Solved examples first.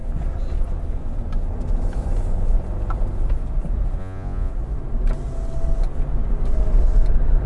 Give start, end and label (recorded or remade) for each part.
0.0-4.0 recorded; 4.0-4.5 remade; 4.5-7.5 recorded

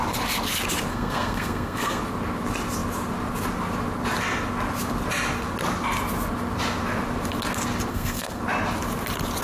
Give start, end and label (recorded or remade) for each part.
0.0-0.9 recorded; 0.9-2.0 remade; 2.0-7.9 recorded; 7.9-8.4 remade; 8.4-9.4 recorded

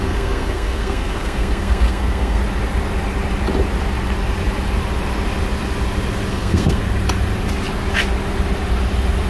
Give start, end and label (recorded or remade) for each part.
0.0-2.4 remade; 2.4-6.3 recorded; 6.3-6.8 remade; 6.8-9.3 recorded

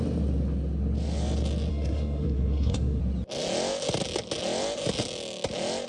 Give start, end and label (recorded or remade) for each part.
0.0-1.7 recorded; 1.7-3.0 remade; 3.0-5.9 recorded